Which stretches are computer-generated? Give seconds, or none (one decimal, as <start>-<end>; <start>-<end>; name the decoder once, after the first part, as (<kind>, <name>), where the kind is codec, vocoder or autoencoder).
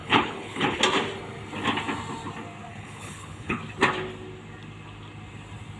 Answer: 0.0-0.8 (codec, HILCodec); 2.7-3.6